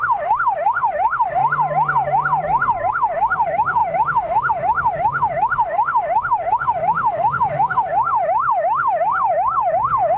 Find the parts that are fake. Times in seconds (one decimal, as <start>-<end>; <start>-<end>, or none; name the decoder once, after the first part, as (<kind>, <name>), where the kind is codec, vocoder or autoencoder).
0.0-1.4 (autoencoder, DAC-VAE); 2.9-10.2